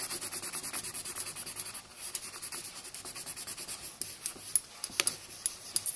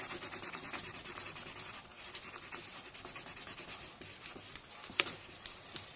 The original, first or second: first